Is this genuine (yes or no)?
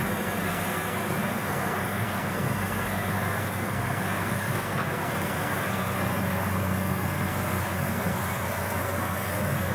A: no